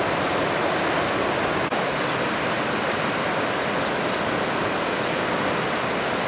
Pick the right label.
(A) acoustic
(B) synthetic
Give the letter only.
A